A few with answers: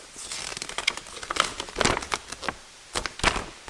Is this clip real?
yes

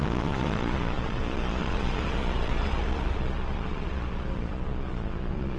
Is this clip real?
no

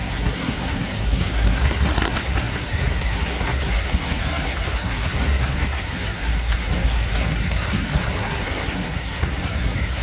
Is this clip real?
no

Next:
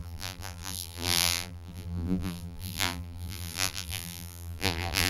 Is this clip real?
no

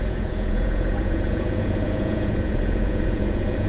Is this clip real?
no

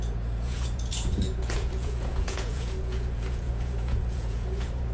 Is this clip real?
no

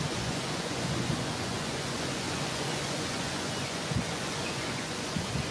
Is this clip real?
no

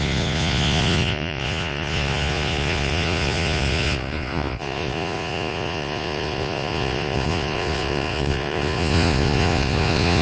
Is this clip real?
no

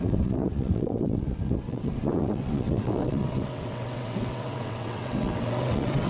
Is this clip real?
no